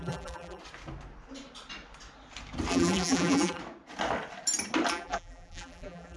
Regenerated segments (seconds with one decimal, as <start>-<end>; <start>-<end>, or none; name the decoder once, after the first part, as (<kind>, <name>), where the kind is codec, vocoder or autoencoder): 0.0-0.6 (vocoder, BigVGAN v2); 2.7-3.6; 4.9-6.2